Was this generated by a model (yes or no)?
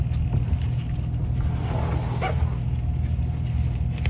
no